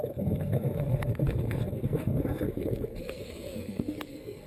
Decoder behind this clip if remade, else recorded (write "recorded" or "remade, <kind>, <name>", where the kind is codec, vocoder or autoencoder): remade, codec, SNAC